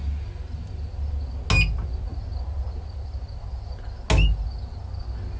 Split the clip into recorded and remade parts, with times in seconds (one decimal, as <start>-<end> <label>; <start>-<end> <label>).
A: 0.0-5.4 recorded